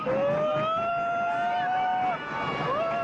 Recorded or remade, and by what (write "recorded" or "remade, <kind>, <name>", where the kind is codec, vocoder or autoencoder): recorded